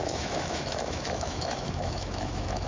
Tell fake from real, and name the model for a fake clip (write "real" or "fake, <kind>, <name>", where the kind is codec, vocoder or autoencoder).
fake, autoencoder, DAC-VAE